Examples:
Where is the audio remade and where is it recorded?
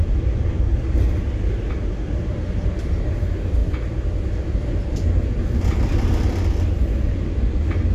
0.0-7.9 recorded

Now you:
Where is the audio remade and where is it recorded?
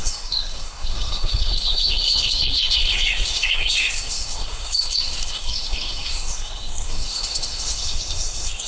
0.0-8.7 remade